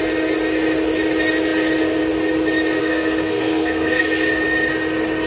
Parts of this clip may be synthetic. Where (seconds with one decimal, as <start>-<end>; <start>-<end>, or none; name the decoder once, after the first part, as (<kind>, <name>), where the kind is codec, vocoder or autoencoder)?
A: 2.8-4.0 (codec, SNAC)